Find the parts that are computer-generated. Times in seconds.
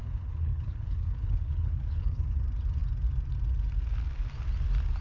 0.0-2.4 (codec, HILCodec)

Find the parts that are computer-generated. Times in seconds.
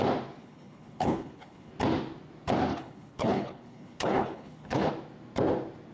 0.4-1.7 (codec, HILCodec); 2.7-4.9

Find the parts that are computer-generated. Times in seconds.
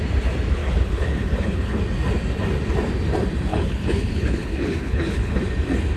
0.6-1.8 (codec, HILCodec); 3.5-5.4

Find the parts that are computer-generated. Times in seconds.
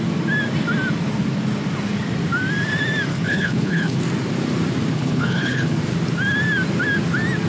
3.1-4.0 (codec, HILCodec); 4.9-5.8